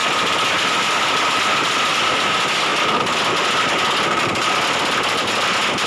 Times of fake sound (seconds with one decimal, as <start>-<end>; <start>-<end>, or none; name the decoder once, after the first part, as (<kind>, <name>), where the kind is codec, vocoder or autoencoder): none